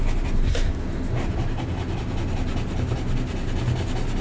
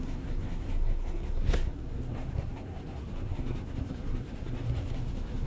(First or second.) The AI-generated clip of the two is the second